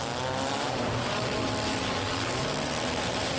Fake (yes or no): no